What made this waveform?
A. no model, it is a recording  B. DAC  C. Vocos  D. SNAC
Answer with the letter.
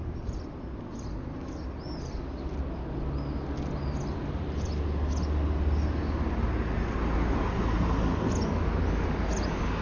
A